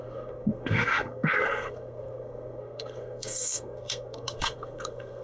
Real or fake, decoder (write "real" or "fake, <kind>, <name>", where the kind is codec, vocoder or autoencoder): fake, codec, SNAC